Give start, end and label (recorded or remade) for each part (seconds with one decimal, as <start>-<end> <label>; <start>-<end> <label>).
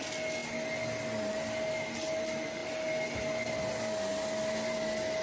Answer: 0.0-5.2 recorded